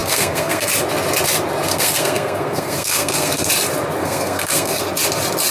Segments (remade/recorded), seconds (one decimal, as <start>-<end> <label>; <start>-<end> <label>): 0.0-0.7 remade; 0.7-1.7 recorded; 1.7-3.5 remade; 3.5-4.0 recorded; 4.0-4.8 remade; 4.8-5.5 recorded

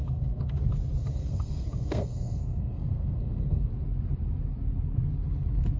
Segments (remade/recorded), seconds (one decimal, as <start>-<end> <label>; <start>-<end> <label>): 0.0-0.6 remade; 0.6-1.0 recorded; 1.0-3.7 remade; 3.7-5.8 recorded

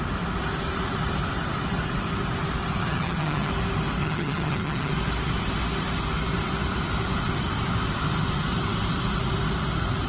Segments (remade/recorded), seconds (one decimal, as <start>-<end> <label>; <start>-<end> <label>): 0.0-2.8 recorded; 2.8-3.5 remade; 3.5-4.0 recorded; 4.0-4.9 remade; 4.9-10.1 recorded

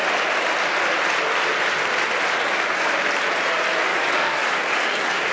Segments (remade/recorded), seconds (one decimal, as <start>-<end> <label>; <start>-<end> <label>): 0.0-3.9 recorded; 3.9-5.3 remade

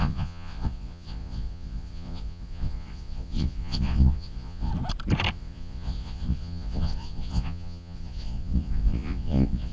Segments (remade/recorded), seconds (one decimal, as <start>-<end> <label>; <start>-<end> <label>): 0.0-4.7 remade; 4.7-5.3 recorded; 5.3-9.7 remade